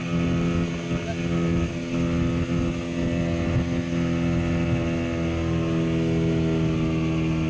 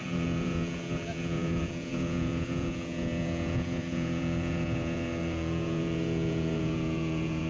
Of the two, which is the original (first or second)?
first